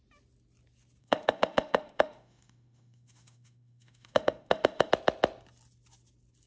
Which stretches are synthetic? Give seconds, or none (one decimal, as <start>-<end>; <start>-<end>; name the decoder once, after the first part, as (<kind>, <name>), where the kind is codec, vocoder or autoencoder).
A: 1.0-4.9 (autoencoder, DAC-VAE)